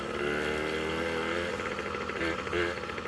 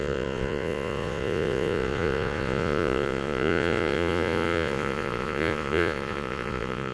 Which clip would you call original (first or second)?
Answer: first